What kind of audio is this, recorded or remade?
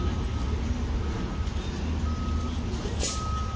recorded